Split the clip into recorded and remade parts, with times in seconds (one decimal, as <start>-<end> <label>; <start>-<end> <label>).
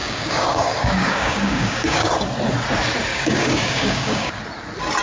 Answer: 0.0-2.1 remade; 2.1-3.1 recorded; 3.1-4.3 remade; 4.3-5.0 recorded